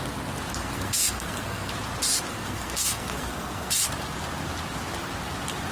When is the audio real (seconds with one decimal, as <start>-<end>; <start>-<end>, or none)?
0.0-0.6; 1.7-2.3; 3.7-5.7